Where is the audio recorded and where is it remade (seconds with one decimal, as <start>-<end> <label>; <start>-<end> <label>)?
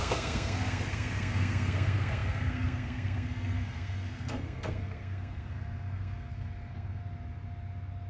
0.0-7.0 remade; 7.0-8.1 recorded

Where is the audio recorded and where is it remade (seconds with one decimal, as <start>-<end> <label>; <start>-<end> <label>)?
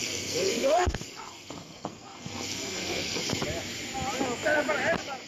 0.0-3.2 remade; 3.2-5.3 recorded